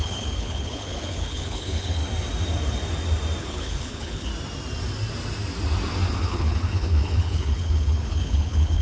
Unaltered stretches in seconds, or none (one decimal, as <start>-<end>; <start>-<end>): 2.0-3.4; 4.3-6.1